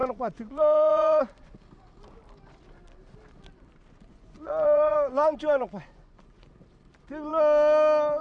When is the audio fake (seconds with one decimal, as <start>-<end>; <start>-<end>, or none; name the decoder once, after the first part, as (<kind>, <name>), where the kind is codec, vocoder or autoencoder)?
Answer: 0.0-1.2 (vocoder, Vocos); 4.1-6.5